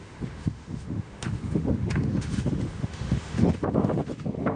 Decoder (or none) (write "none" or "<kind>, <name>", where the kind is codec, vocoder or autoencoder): autoencoder, DAC-VAE